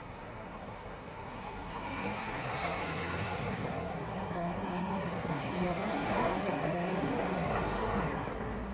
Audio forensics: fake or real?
fake